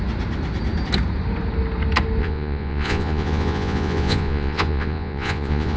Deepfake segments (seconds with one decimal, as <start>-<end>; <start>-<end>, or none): 2.2-5.8